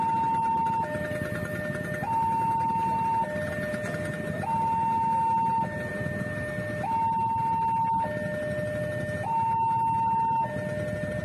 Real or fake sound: real